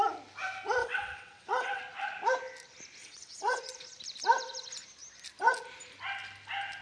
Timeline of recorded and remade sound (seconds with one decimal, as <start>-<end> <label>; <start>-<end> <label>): 0.0-0.8 recorded; 0.8-1.8 remade; 1.8-3.0 recorded; 3.0-3.6 remade; 3.6-6.8 recorded